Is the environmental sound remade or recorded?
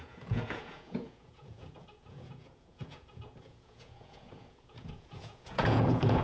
remade